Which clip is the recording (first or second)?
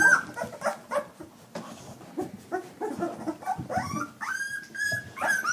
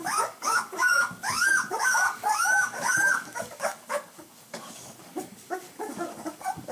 first